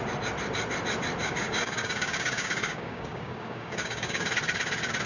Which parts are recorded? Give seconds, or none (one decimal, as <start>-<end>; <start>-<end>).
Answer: 0.0-1.2; 4.3-5.1